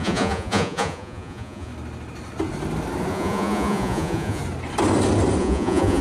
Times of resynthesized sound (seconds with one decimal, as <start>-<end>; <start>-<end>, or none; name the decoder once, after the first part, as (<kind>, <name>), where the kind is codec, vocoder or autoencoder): 0.0-1.7 (vocoder, Vocos); 3.1-4.4; 5.4-6.0

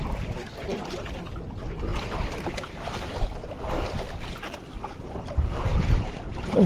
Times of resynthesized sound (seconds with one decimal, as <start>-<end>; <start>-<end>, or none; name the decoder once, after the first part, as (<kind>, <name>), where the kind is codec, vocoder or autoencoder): 5.7-6.7 (vocoder, BigVGAN v2)